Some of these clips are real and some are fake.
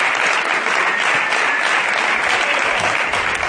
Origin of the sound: real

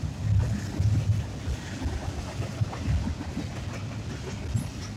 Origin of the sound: real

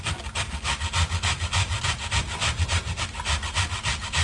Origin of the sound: fake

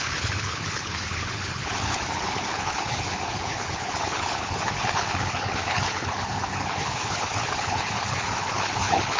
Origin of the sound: fake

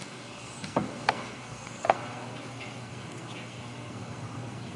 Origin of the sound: fake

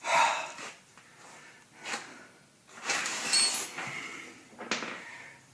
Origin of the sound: real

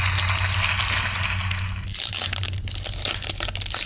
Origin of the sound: real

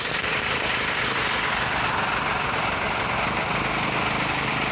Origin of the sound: real